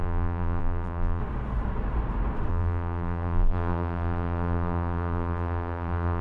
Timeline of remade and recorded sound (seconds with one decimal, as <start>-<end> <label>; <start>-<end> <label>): 0.0-1.2 remade; 1.2-2.5 recorded; 2.5-6.2 remade